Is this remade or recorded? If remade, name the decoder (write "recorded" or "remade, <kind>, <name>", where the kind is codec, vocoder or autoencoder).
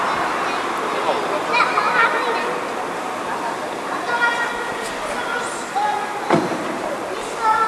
recorded